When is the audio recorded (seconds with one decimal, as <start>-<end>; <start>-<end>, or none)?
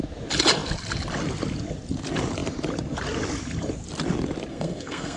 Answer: 0.0-4.5